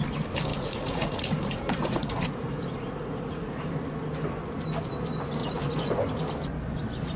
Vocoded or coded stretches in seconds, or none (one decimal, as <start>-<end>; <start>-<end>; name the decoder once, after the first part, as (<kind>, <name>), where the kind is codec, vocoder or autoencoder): 0.5-3.7 (vocoder, Vocos); 5.4-5.9